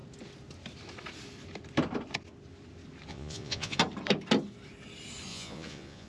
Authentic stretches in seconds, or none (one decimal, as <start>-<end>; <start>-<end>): 0.0-3.1; 3.8-5.3

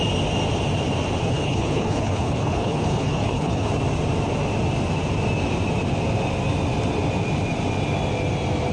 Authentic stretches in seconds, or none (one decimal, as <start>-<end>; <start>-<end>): 0.0-1.2; 3.7-8.7

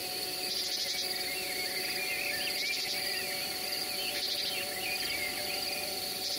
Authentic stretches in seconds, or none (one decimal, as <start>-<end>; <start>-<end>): 0.0-5.4